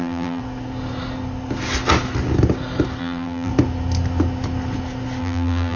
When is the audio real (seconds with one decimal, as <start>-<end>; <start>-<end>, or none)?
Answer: 0.4-3.0; 3.5-5.2